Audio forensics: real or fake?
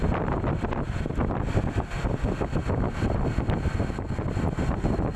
real